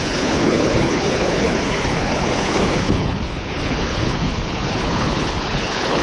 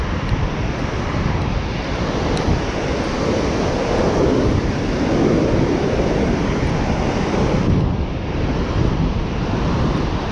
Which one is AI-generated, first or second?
first